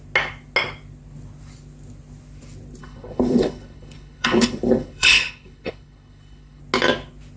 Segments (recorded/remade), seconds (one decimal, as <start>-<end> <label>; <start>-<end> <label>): 0.0-2.8 recorded; 2.8-6.6 remade; 6.6-7.4 recorded